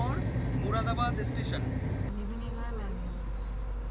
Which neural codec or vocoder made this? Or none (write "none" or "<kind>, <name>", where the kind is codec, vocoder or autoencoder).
none